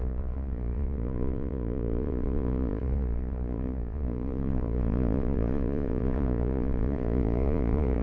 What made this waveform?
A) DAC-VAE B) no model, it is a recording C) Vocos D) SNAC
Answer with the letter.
C